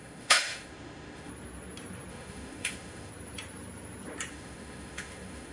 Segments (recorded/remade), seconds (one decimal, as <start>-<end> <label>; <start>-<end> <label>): 0.0-1.3 remade; 1.3-2.1 recorded; 2.1-3.1 remade; 3.1-4.3 recorded; 4.3-5.5 remade